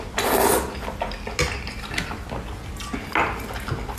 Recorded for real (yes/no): yes